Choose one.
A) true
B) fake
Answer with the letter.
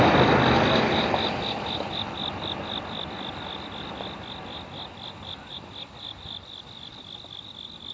B